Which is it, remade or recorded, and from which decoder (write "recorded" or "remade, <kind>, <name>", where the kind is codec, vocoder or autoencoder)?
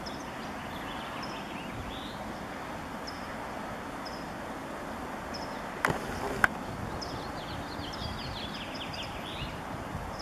recorded